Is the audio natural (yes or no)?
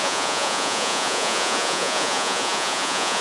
no